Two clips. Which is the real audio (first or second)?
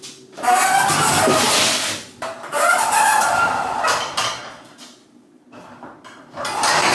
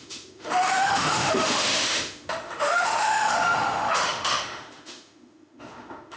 first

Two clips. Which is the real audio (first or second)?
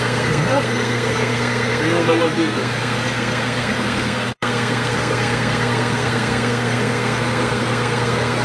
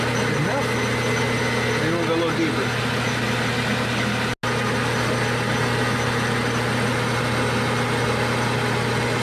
second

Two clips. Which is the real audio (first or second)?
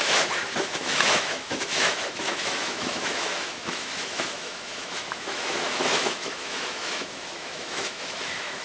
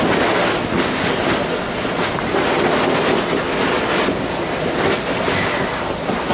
second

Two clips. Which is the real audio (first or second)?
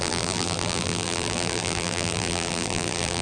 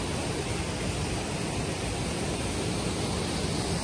second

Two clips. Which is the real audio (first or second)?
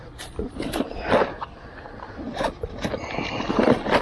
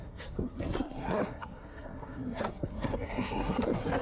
first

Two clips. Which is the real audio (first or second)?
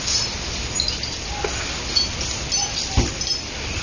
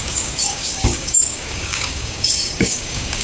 first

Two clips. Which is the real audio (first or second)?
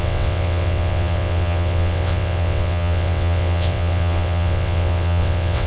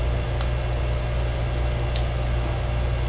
second